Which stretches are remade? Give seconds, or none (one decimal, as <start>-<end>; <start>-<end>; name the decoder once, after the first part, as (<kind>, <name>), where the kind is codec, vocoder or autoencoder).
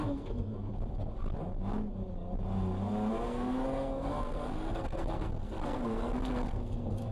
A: 0.0-0.7 (codec, SNAC); 3.1-7.1